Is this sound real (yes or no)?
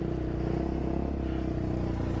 yes